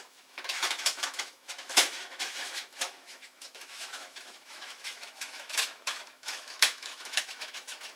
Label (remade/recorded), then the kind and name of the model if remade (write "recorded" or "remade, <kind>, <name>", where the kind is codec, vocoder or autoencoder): remade, autoencoder, DAC-VAE